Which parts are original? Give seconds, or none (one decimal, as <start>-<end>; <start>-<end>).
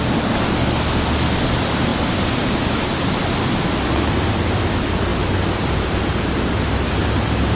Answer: 0.0-7.6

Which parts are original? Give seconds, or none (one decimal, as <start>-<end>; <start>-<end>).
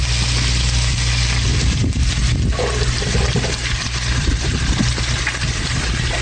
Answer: 0.0-6.2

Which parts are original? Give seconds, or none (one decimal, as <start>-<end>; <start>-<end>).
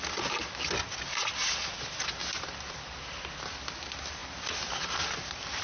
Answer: 0.0-2.2; 3.2-4.2; 5.0-5.6